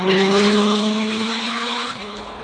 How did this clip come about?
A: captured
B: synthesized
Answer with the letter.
B